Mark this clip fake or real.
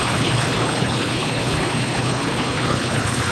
fake